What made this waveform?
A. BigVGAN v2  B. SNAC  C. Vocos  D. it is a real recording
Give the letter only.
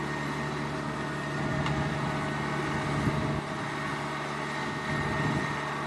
D